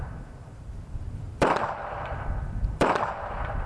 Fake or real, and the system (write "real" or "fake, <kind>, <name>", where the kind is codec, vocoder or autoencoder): fake, vocoder, BigVGAN v2